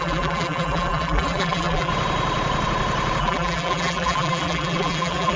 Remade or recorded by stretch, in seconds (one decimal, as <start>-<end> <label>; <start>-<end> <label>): 0.0-1.9 remade; 1.9-3.2 recorded; 3.2-5.4 remade